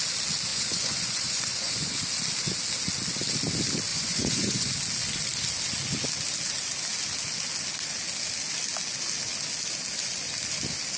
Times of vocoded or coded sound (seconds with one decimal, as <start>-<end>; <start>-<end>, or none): 0.5-2.0; 3.9-4.7